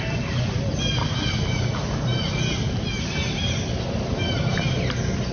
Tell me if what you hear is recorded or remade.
recorded